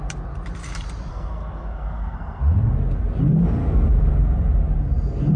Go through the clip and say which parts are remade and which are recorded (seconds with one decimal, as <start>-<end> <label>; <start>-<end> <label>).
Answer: 0.0-1.1 recorded; 1.1-2.4 remade; 2.4-5.4 recorded